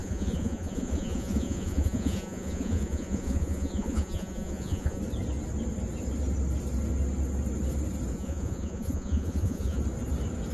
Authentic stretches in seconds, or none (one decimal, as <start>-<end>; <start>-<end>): 5.0-8.1; 9.8-10.5